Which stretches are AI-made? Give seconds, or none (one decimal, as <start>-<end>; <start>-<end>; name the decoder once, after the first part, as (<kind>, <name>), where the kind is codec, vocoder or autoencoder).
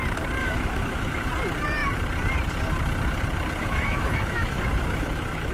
0.4-1.3 (autoencoder, DAC-VAE); 3.6-5.5